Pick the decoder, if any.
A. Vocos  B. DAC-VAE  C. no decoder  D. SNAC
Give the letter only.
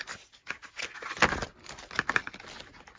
C